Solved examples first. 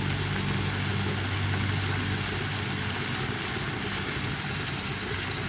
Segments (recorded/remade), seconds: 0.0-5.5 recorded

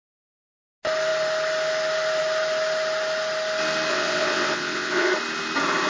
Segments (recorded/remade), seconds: 0.0-3.9 recorded; 3.9-5.1 remade; 5.1-5.9 recorded

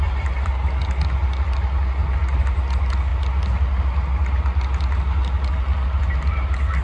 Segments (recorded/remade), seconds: 0.0-6.8 recorded

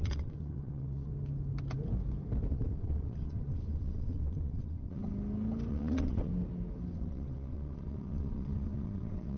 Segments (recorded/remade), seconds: 0.0-1.1 remade; 1.1-2.5 recorded; 2.5-5.1 remade; 5.1-5.7 recorded; 5.7-6.3 remade; 6.3-6.9 recorded; 6.9-9.4 remade

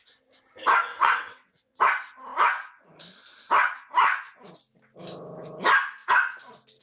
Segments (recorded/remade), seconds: 0.0-0.9 recorded; 0.9-1.8 remade; 1.8-6.8 recorded

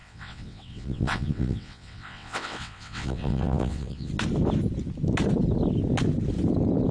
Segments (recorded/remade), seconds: 0.0-4.1 remade; 4.1-6.9 recorded

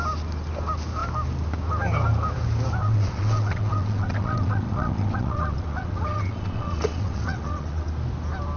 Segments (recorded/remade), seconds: 0.0-2.8 recorded; 2.8-7.9 remade; 7.9-8.6 recorded

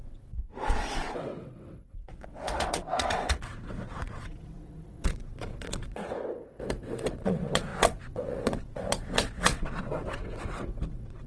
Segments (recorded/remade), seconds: 0.0-11.3 remade